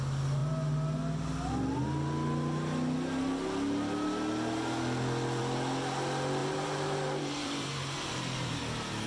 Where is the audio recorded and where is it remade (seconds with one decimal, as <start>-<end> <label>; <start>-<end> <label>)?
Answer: 0.0-6.4 recorded; 6.4-8.6 remade; 8.6-9.1 recorded